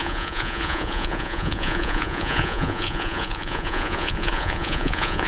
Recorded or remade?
remade